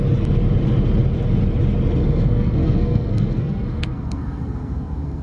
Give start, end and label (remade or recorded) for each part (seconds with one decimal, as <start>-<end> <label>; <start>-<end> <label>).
0.0-2.0 recorded; 2.0-5.2 remade

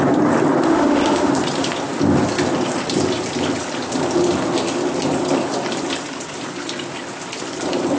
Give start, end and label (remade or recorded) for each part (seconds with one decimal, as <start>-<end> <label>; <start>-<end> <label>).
0.0-0.7 recorded; 0.7-1.3 remade; 1.3-8.0 recorded

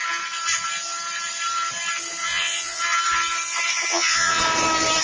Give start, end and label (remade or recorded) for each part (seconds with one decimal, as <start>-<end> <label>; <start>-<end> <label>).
0.0-2.2 recorded; 2.2-2.8 remade; 2.8-3.9 recorded; 3.9-4.4 remade; 4.4-5.0 recorded

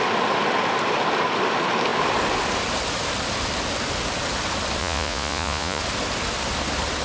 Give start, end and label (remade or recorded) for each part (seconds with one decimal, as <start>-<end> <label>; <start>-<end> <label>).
0.0-4.8 recorded; 4.8-5.8 remade; 5.8-7.0 recorded

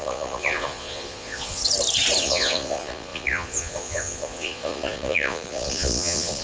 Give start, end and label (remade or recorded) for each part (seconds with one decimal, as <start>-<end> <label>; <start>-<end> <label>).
0.0-1.6 remade; 1.6-2.2 recorded; 2.2-6.4 remade

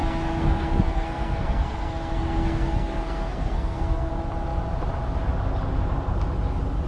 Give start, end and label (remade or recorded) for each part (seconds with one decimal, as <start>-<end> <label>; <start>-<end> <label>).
0.0-4.1 remade; 4.1-6.9 recorded

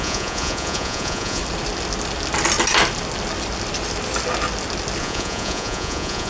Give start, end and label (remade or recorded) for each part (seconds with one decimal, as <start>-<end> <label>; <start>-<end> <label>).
0.0-1.4 remade; 1.4-5.0 recorded; 5.0-6.3 remade

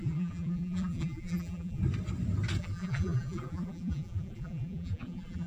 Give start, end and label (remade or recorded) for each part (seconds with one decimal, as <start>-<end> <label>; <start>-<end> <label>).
0.0-1.8 remade; 1.8-2.6 recorded; 2.6-5.5 remade